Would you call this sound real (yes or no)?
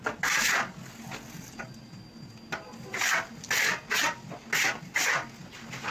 yes